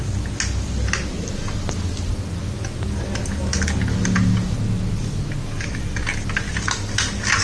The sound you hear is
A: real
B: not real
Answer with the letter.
A